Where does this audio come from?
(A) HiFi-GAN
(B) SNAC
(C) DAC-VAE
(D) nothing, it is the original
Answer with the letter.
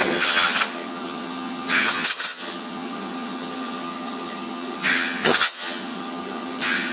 A